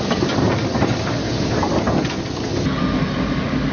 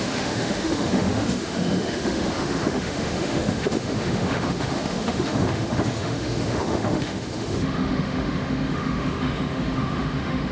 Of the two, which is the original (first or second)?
first